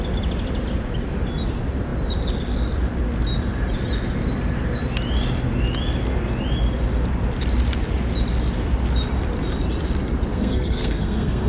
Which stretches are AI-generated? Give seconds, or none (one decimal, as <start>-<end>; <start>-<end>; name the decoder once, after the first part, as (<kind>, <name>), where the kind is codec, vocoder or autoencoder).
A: 10.3-11.5 (codec, SNAC)